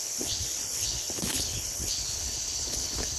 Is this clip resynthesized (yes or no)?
yes